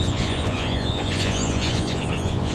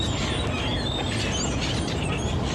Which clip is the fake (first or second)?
first